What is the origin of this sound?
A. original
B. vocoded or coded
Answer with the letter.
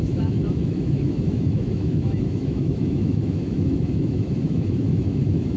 B